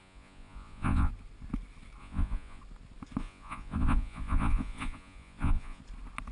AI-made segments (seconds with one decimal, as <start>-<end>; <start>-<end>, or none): 0.0-1.1; 2.0-2.6; 3.2-5.8